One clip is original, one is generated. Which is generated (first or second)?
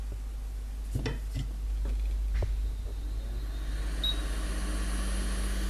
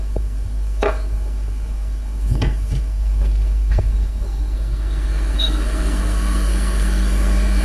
second